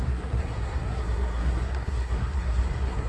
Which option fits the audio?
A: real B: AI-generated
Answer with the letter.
B